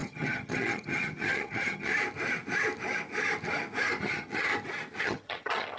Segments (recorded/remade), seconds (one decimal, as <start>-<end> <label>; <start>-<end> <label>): 0.0-1.9 remade; 1.9-4.0 recorded; 4.0-4.5 remade; 4.5-5.0 recorded; 5.0-5.8 remade